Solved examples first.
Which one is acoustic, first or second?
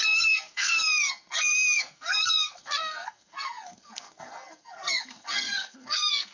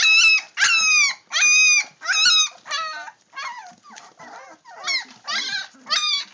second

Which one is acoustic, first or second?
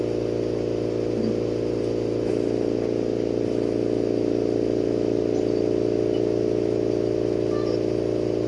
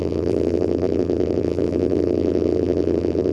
first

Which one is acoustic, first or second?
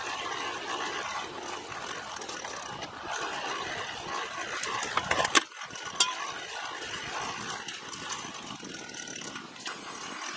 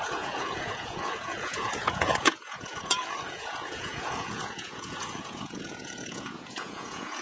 first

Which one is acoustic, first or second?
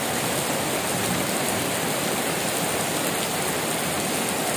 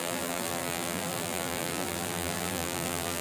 first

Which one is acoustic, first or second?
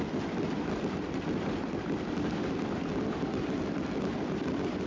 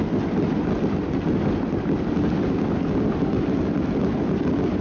second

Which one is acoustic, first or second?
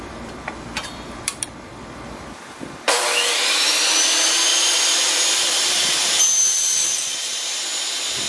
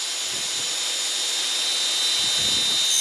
second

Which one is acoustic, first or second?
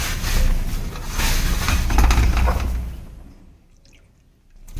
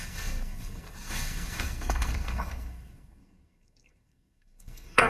first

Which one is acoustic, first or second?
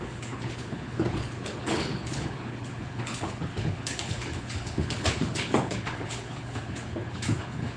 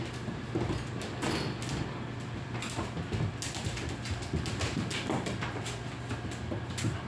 second